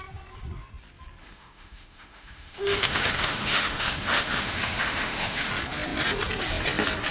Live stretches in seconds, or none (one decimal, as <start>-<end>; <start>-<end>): 0.0-1.2; 5.5-7.1